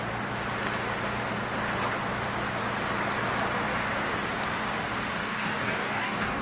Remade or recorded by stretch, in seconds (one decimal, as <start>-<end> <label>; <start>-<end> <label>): 0.0-5.2 recorded; 5.2-6.4 remade